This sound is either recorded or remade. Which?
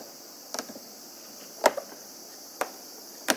recorded